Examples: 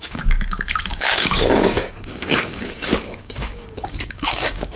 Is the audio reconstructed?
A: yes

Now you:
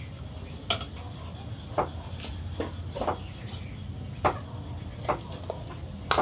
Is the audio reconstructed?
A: no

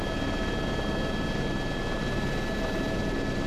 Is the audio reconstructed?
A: no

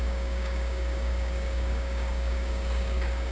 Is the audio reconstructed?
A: yes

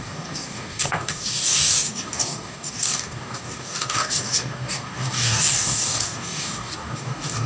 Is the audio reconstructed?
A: yes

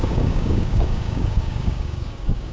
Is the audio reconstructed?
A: yes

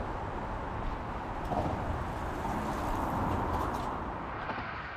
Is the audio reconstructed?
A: no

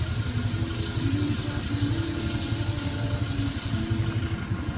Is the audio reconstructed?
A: no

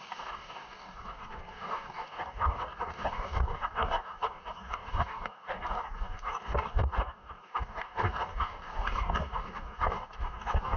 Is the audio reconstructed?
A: yes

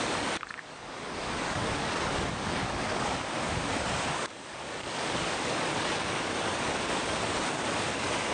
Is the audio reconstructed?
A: yes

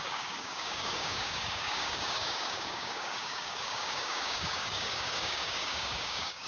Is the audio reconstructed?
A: yes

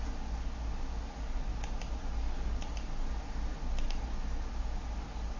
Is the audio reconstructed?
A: no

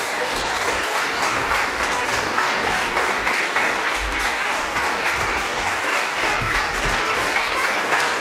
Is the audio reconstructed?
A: yes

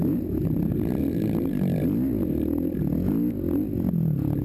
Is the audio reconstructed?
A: no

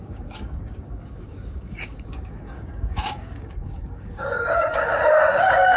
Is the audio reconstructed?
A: yes